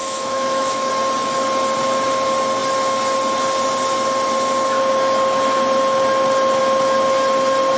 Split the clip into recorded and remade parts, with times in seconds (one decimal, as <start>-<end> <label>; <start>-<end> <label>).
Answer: 0.0-0.9 remade; 0.9-7.8 recorded